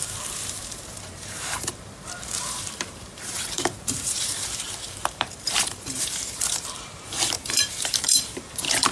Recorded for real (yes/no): no